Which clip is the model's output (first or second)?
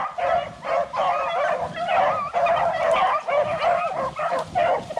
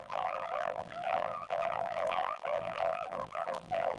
second